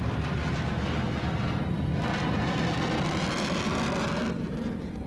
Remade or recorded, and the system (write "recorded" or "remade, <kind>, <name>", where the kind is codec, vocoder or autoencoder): recorded